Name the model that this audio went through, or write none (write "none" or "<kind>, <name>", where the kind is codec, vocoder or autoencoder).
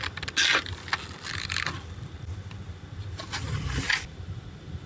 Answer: none